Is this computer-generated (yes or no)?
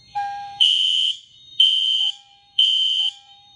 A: yes